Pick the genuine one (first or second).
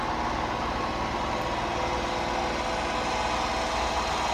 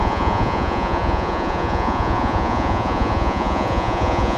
first